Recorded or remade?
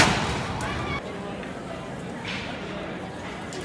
recorded